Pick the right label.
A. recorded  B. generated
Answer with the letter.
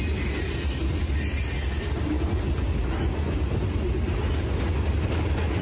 A